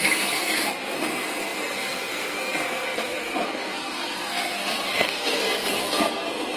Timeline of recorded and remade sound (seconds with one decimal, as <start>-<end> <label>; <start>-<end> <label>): 0.0-6.6 remade